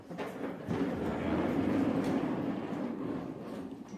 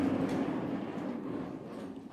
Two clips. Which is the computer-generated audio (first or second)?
first